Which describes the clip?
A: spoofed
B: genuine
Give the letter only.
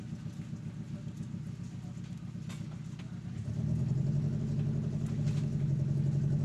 B